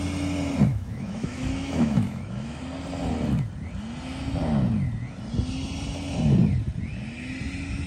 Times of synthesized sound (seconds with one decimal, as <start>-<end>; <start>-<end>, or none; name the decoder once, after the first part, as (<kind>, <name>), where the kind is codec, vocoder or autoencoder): 0.7-2.6 (autoencoder, DAC-VAE)